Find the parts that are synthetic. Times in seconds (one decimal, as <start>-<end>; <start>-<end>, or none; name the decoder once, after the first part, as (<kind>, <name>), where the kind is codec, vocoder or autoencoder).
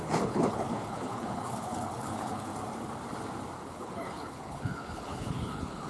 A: 0.0-2.5 (codec, HILCodec); 3.7-5.9